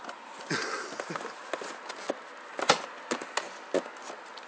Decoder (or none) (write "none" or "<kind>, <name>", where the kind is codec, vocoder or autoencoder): none